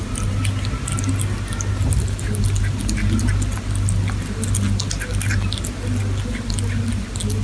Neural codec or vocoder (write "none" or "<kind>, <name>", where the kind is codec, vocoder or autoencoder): none